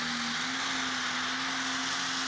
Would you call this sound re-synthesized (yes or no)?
no